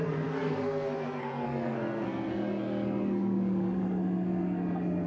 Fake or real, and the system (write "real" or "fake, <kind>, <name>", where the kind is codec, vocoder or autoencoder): fake, codec, SNAC